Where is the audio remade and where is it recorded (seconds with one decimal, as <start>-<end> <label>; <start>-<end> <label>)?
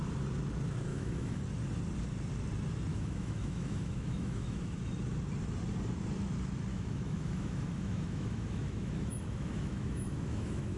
0.0-0.9 recorded; 0.9-1.4 remade; 1.4-2.9 recorded; 2.9-4.8 remade; 4.8-6.7 recorded; 6.7-10.8 remade